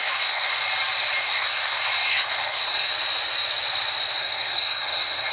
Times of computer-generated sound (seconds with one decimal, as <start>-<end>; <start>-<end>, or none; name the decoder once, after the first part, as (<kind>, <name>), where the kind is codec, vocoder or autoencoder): 0.0-0.6 (codec, SNAC); 1.2-2.9; 4.2-5.3